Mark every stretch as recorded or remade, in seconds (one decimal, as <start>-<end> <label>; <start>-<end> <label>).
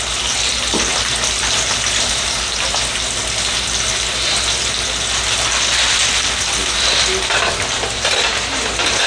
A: 0.0-9.1 recorded